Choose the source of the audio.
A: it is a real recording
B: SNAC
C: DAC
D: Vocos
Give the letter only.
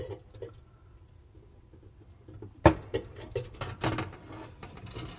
A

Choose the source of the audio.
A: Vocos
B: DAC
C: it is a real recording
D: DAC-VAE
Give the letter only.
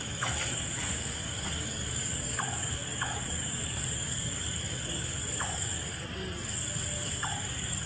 B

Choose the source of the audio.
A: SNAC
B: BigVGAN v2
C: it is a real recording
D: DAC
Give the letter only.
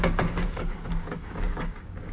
D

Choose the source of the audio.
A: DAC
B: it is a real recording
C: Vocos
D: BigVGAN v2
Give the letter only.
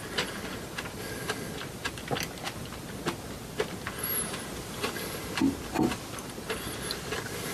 B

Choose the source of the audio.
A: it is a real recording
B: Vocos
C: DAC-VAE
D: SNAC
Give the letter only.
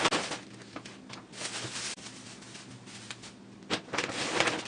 A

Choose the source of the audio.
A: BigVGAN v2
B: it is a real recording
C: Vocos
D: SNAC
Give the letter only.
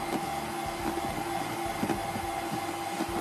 B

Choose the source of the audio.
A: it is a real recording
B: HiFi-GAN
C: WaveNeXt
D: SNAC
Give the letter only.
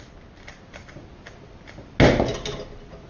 A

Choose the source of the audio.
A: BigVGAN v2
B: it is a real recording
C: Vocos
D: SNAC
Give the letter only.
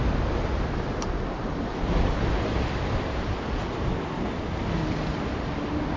B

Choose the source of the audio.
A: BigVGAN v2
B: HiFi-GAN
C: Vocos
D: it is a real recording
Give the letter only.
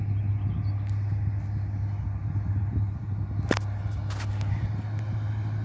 D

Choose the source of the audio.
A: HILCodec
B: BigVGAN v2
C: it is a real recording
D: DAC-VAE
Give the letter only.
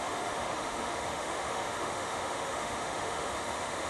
D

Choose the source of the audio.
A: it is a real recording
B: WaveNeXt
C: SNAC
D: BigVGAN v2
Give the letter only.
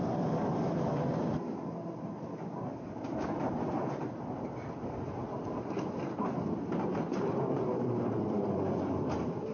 D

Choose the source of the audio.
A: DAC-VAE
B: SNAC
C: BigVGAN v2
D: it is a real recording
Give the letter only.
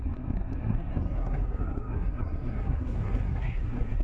B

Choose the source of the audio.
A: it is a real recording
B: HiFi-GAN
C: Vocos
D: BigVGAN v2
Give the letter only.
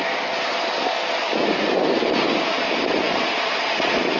A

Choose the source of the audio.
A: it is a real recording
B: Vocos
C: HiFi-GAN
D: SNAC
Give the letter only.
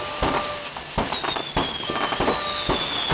A